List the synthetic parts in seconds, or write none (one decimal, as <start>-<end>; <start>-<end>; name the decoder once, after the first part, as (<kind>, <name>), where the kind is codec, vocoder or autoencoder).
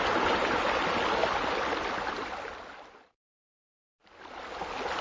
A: none